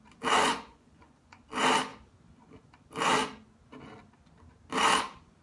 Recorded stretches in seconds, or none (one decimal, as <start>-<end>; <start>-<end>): 0.0-0.4; 1.4-5.4

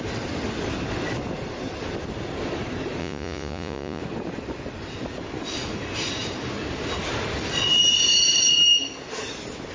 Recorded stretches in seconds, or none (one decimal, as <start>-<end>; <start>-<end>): 0.0-3.0; 4.0-9.7

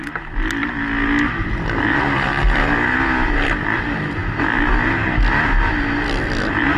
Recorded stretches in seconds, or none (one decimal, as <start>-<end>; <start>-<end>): 0.0-6.8

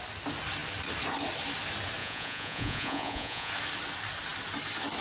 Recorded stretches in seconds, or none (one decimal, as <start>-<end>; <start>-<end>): 0.0-2.0; 3.5-5.0